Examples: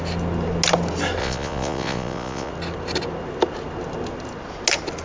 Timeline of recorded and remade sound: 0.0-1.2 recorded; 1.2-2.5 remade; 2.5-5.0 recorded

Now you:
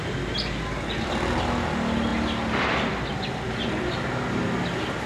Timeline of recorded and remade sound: 0.0-5.1 recorded

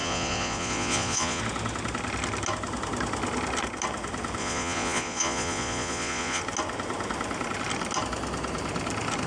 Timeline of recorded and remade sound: 0.0-1.4 remade; 1.4-4.4 recorded; 4.4-6.4 remade; 6.4-9.3 recorded